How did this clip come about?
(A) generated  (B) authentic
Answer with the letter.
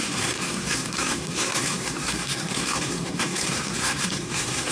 A